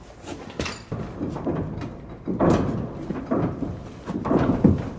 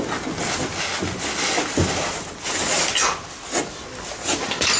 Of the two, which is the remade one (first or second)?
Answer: first